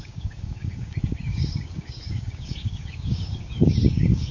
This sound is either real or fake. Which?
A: fake